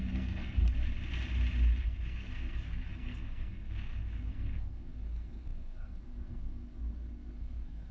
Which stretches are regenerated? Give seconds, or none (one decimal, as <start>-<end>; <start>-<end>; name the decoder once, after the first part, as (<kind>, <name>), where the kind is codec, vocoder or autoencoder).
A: 0.0-0.6 (codec, SNAC); 1.8-7.9